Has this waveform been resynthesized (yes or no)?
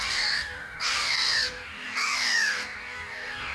yes